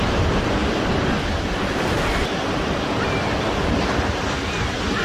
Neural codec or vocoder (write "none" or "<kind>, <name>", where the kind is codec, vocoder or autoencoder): none